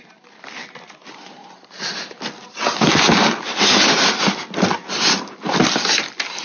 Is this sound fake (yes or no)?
no